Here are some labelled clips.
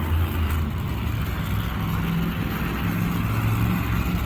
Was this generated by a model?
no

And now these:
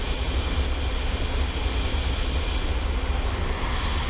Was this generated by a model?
no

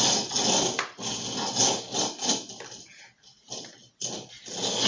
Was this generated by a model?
no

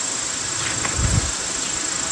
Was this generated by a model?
no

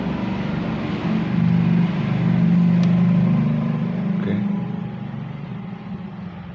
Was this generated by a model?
no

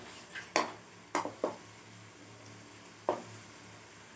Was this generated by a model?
no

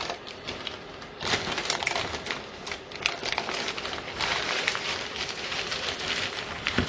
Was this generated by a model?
yes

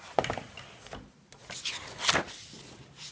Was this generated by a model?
no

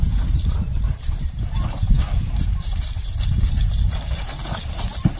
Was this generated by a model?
yes